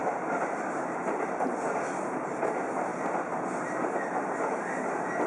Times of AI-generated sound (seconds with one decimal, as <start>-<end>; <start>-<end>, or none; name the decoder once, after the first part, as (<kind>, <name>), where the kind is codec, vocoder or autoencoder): 0.0-2.4 (vocoder, BigVGAN v2)